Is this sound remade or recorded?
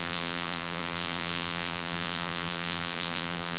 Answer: remade